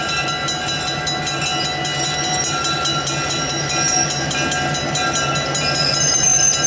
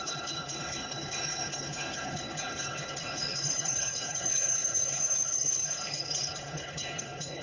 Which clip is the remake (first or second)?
second